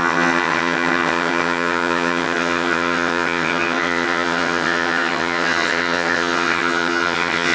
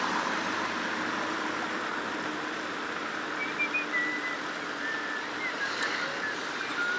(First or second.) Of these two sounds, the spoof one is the first